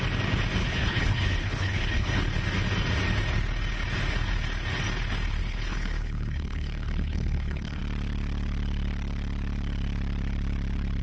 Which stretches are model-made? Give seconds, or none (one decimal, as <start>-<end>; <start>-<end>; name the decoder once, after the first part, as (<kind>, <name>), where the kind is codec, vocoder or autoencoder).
0.6-2.2 (codec, HILCodec); 5.4-7.8